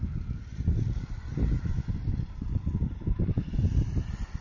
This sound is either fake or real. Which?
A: real